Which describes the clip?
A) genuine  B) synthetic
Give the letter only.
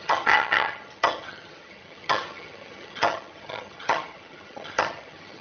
B